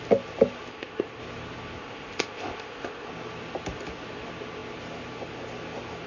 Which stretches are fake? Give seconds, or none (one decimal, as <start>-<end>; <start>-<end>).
0.7-1.2; 1.8-3.1